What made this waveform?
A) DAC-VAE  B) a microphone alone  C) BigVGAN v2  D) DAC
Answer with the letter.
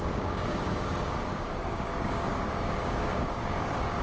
D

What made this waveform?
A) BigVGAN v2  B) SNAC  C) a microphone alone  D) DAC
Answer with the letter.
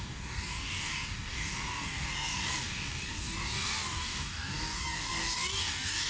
D